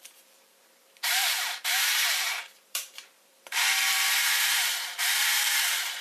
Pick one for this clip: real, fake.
fake